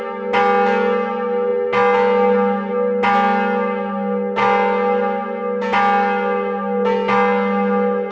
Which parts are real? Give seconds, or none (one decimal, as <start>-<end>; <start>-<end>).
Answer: 0.0-8.1